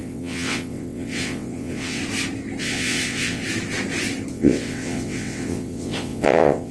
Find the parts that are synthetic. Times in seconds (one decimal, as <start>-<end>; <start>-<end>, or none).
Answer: 0.0-2.0; 2.6-3.4; 4.3-6.7